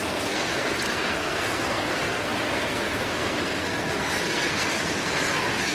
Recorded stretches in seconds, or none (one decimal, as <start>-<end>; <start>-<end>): none